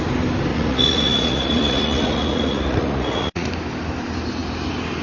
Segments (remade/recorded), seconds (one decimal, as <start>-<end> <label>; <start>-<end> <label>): 0.0-0.5 recorded; 0.5-3.5 remade; 3.5-5.0 recorded